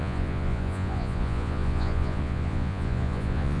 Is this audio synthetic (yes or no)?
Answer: yes